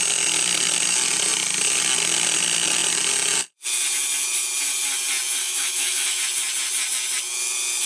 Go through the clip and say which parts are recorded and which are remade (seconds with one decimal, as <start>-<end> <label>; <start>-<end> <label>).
0.0-5.4 recorded; 5.4-6.2 remade; 6.2-7.9 recorded